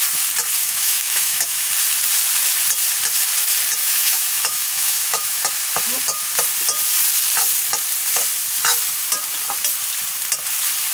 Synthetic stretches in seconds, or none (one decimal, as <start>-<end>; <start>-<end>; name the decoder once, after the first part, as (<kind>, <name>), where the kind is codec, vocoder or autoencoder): 0.6-1.7 (autoencoder, DAC-VAE); 3.8-5.4